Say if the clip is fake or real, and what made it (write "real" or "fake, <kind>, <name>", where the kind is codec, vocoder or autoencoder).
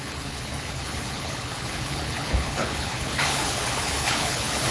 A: fake, codec, HILCodec